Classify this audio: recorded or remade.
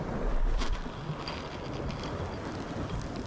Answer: recorded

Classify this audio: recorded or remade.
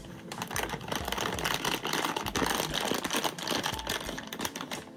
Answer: remade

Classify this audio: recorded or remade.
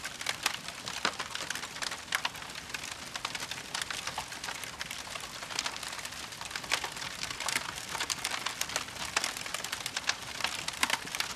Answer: recorded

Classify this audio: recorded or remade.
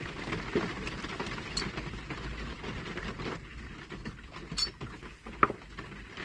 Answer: recorded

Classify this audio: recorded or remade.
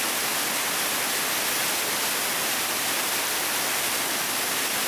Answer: recorded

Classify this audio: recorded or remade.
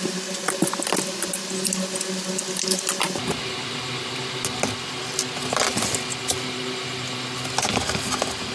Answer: recorded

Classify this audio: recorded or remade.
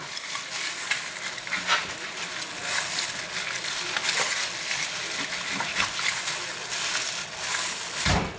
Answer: recorded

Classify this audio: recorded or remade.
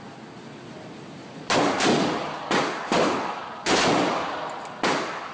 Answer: recorded